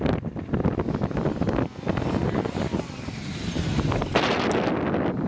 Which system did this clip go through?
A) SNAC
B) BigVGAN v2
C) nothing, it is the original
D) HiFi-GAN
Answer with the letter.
C